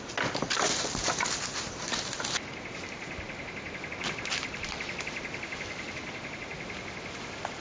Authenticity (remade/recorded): recorded